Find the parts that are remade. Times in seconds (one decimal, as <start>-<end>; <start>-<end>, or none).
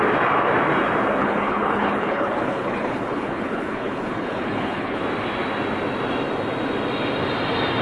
1.2-5.0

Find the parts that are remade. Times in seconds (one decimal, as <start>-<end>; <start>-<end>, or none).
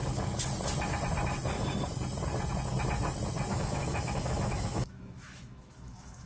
3.5-6.3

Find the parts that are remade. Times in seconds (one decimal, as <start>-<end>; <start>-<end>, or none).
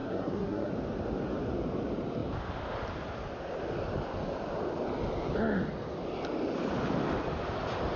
0.0-0.7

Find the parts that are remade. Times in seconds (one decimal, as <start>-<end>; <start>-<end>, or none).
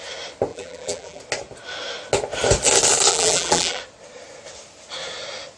0.5-1.2; 3.1-3.8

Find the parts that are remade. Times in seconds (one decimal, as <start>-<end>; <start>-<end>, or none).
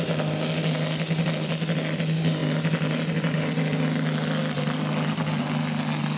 none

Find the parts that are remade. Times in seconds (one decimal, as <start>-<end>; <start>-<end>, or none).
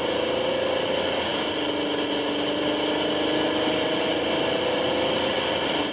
none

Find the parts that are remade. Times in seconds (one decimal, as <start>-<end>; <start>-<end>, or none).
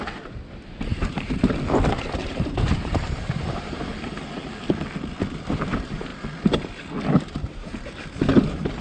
0.9-1.6; 2.2-3.9